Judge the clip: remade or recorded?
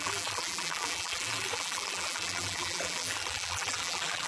remade